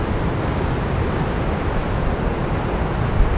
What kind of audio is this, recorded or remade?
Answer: recorded